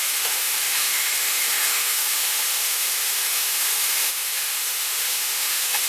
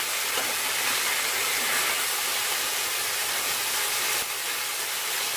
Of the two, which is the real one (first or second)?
second